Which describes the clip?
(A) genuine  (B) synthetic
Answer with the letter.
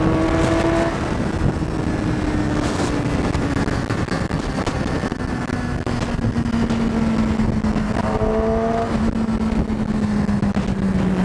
A